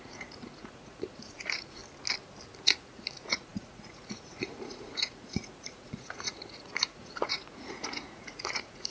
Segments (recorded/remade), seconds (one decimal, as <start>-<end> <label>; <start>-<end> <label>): 0.0-1.8 remade; 1.8-2.6 recorded; 2.6-8.9 remade